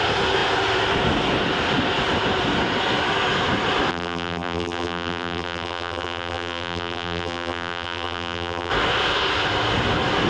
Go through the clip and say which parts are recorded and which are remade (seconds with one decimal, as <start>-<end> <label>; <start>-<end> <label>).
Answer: 0.0-3.9 recorded; 3.9-8.7 remade; 8.7-10.3 recorded